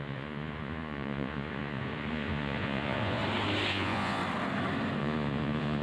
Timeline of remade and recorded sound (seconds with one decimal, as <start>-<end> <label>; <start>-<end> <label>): 0.0-3.2 remade; 3.2-3.7 recorded; 3.7-4.2 remade; 4.2-5.0 recorded; 5.0-5.8 remade